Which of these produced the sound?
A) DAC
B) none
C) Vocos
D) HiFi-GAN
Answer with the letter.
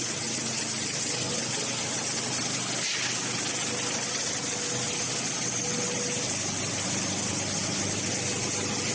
B